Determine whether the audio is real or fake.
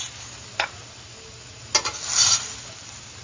real